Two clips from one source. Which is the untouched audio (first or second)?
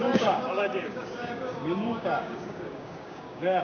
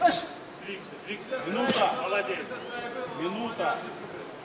second